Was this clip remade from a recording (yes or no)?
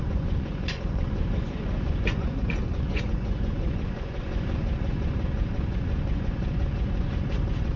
yes